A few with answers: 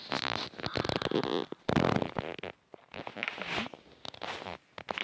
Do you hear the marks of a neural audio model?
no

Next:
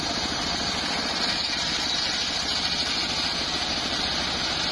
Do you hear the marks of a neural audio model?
no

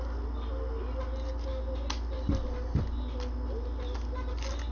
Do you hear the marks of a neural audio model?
no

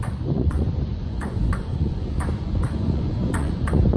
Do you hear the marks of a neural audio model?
yes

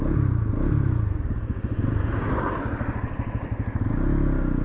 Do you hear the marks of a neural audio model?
no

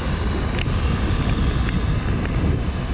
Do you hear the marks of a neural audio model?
no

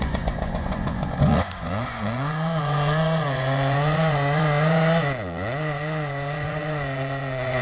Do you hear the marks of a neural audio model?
yes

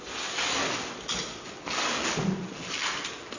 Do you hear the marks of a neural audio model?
no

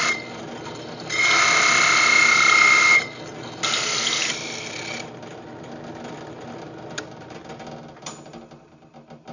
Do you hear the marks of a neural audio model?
no